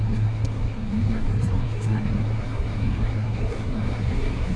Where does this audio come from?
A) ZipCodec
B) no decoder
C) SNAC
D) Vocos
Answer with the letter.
C